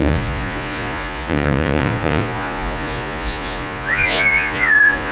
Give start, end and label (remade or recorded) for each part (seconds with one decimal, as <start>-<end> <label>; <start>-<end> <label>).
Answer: 0.0-5.1 remade